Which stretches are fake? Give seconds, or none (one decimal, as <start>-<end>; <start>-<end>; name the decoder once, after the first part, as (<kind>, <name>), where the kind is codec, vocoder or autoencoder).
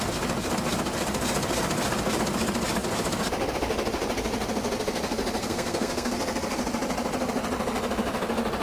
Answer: 5.4-6.1 (codec, SNAC)